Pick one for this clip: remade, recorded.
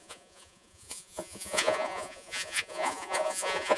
remade